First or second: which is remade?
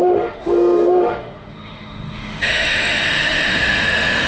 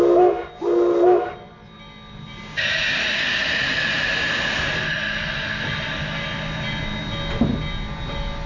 first